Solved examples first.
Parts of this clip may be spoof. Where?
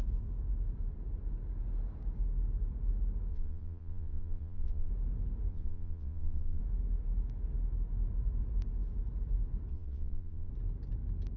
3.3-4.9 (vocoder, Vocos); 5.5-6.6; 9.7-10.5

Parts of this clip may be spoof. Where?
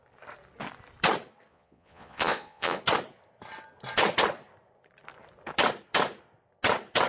1.5-2.8 (vocoder, Vocos)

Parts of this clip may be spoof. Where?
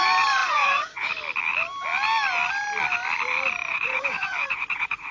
0.4-1.1 (vocoder, Vocos); 3.6-5.1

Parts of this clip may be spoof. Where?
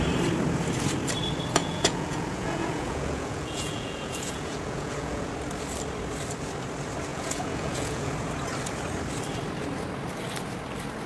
1.6-5.3 (vocoder, Vocos); 7.1-8.1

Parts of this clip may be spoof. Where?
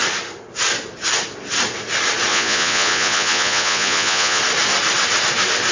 2.3-4.4 (vocoder, Vocos)